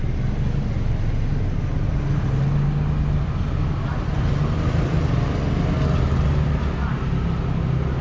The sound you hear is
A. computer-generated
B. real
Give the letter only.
B